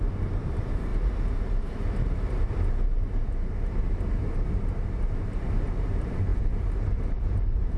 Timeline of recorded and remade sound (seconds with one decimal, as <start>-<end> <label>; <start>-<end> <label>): 0.0-0.9 remade; 0.9-5.2 recorded; 5.2-7.8 remade